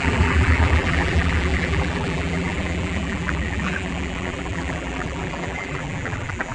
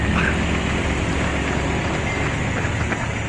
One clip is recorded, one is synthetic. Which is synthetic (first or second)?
first